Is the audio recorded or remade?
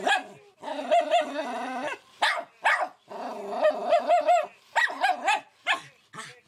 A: recorded